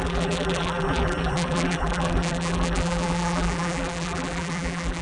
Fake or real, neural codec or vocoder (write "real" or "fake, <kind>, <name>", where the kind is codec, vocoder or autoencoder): fake, vocoder, BigVGAN v2